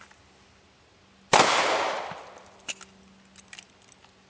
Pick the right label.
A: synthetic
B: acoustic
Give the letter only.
B